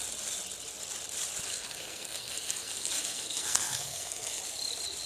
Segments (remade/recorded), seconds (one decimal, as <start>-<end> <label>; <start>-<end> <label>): 0.0-1.5 recorded; 1.5-4.4 remade; 4.4-5.1 recorded